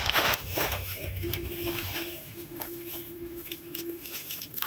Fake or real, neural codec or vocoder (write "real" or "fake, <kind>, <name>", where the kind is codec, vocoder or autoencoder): fake, autoencoder, DAC-VAE